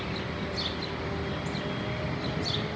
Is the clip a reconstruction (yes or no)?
no